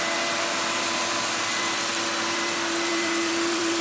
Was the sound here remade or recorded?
remade